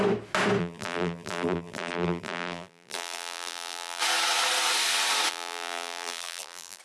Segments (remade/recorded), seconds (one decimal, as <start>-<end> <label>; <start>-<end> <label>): 0.0-0.6 recorded; 0.6-4.0 remade; 4.0-5.3 recorded; 5.3-6.8 remade